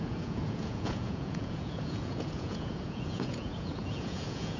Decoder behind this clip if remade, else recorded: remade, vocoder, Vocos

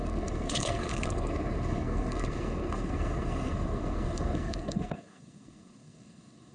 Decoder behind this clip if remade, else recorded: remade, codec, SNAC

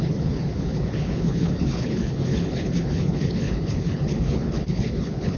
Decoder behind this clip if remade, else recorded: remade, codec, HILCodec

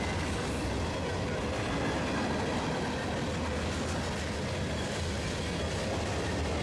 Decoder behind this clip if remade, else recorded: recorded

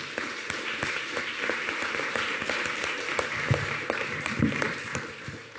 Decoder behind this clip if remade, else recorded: remade, vocoder, BigVGAN v2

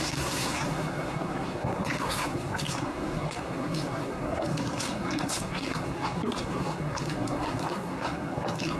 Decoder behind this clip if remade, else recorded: remade, codec, SNAC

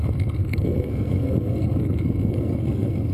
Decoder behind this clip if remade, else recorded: remade, codec, SNAC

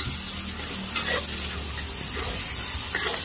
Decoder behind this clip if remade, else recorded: recorded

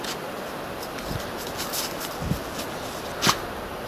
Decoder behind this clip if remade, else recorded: recorded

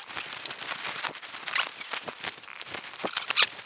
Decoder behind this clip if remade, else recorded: remade, vocoder, BigVGAN v2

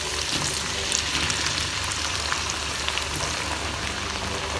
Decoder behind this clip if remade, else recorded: recorded